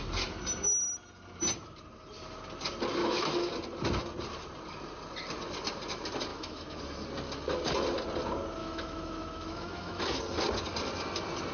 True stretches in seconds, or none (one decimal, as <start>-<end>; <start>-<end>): 0.0-3.0; 3.5-6.3; 6.8-8.6; 10.2-11.5